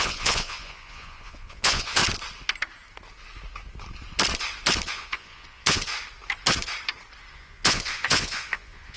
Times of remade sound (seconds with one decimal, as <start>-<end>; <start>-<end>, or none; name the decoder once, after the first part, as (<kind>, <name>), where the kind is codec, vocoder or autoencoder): 0.0-2.0 (vocoder, Vocos); 4.9-5.9; 7.3-9.0